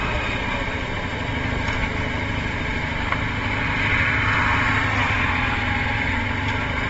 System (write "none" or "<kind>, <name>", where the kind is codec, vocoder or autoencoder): none